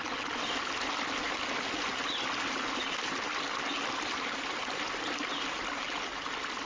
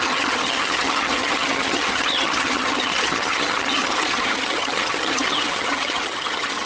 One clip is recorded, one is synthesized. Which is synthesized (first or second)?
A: second